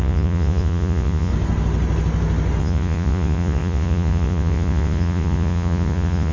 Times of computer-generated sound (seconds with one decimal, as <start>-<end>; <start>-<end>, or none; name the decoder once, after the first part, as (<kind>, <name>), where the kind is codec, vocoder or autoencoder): 0.0-1.3 (vocoder, Vocos); 2.6-6.3